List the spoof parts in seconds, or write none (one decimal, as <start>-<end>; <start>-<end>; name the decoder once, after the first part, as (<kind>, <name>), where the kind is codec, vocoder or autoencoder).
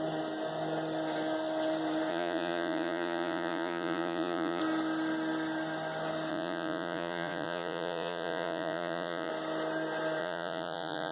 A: 2.1-4.6 (vocoder, Vocos); 6.3-9.3; 10.2-11.1